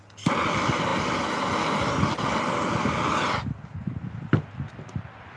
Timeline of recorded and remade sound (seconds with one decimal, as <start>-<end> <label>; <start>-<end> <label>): 0.0-5.4 recorded